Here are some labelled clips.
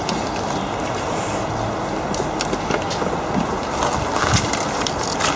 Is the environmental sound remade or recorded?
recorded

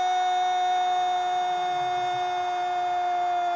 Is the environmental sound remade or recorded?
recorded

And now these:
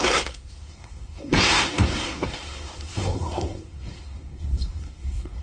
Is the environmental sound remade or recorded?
remade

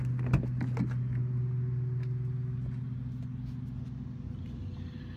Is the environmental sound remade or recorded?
recorded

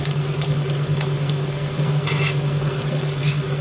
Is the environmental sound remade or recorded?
remade